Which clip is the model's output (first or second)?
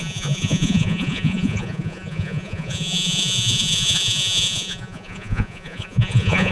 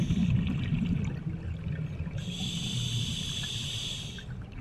first